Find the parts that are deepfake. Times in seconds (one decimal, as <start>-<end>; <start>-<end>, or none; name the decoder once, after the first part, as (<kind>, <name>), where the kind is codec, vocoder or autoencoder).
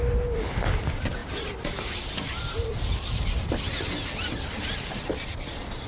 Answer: none